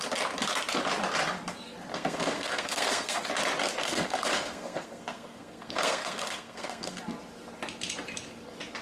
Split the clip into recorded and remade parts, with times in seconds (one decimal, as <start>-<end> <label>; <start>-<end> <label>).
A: 0.0-1.9 recorded; 1.9-3.2 remade; 3.2-3.8 recorded; 3.8-7.0 remade; 7.0-8.8 recorded